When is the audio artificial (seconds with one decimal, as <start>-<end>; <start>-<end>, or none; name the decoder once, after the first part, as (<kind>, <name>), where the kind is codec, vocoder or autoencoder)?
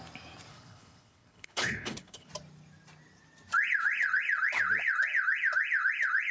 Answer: 0.5-2.3 (codec, HILCodec)